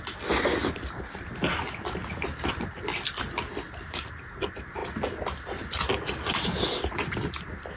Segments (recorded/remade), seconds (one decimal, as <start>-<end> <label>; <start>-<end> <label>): 0.0-7.8 recorded